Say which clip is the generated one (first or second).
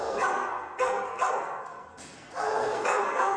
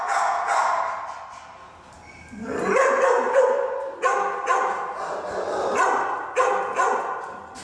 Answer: first